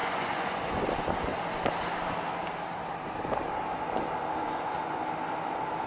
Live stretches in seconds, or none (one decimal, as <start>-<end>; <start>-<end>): 0.8-4.4; 5.0-5.9